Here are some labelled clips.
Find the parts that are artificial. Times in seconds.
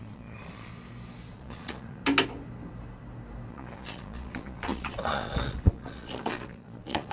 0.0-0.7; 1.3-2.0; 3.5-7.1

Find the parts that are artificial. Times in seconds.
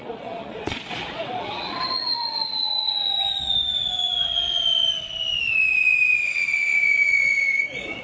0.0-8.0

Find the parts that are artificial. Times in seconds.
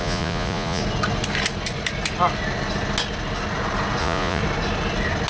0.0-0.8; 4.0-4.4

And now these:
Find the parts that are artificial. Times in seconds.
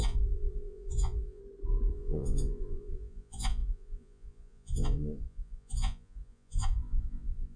0.0-1.4; 1.9-7.6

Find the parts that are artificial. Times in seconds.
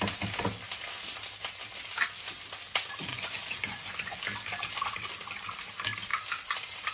3.1-4.2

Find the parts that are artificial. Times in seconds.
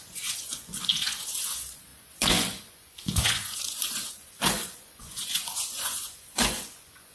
0.0-7.1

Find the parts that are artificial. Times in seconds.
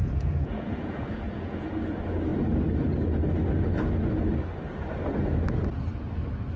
0.0-1.6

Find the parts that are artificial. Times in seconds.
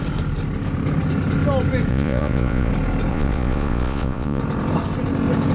1.9-2.7; 3.1-4.4